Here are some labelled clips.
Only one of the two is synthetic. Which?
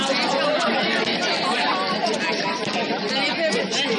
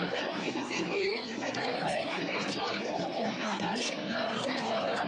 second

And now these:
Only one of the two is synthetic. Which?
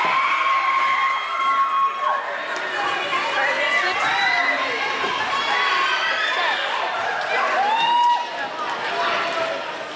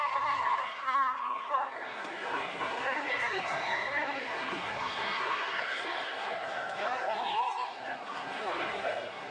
second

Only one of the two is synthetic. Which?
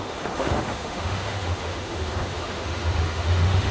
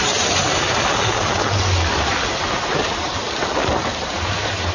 first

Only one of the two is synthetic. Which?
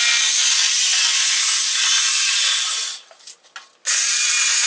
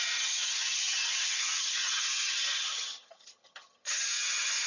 second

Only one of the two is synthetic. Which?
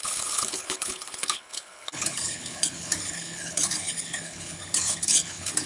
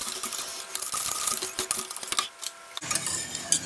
first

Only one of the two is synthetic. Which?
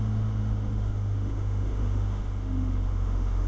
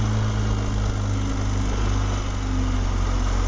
first